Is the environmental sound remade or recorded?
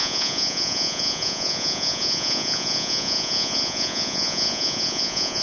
remade